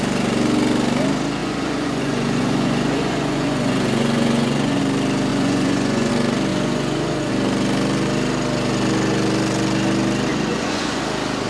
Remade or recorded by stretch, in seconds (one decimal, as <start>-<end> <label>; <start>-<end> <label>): 0.0-1.4 recorded; 1.4-4.8 remade; 4.8-5.3 recorded; 5.3-6.1 remade; 6.1-6.5 recorded; 6.5-7.3 remade; 7.3-10.3 recorded; 10.3-11.0 remade; 11.0-11.5 recorded